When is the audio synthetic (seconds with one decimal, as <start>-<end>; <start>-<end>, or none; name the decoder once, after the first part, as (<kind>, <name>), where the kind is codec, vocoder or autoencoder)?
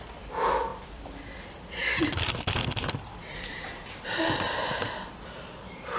0.0-6.0 (vocoder, BigVGAN v2)